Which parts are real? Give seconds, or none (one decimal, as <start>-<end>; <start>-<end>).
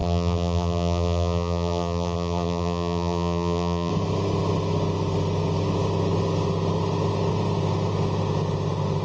3.9-9.0